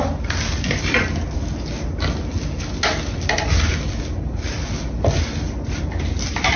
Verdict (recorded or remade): recorded